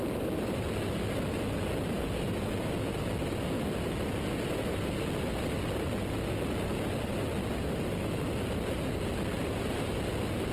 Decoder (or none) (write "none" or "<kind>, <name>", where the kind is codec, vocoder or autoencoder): none